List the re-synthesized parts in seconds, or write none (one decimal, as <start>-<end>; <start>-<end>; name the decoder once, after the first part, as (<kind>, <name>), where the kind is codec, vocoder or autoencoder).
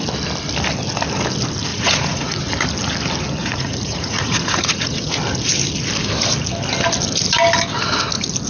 1.7-2.4 (vocoder, Vocos); 3.4-5.2